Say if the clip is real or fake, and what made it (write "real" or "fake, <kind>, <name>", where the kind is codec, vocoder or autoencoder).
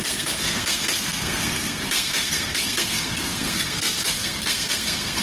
fake, codec, SNAC